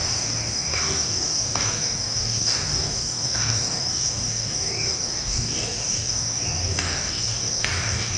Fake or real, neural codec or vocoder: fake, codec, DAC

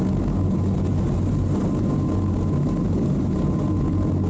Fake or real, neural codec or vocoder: real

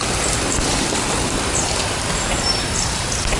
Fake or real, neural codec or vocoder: real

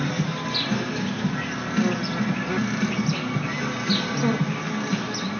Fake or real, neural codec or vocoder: real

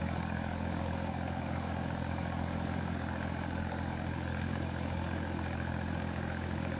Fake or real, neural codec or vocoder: fake, codec, DAC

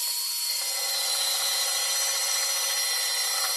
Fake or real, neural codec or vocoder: real